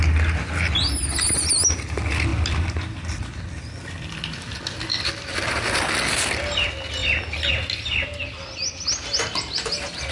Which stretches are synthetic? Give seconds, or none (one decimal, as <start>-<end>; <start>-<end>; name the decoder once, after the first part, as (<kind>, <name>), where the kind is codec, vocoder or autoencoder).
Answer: none